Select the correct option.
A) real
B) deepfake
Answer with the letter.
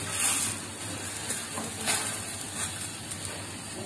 A